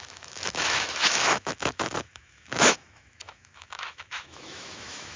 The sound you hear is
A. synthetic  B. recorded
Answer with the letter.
A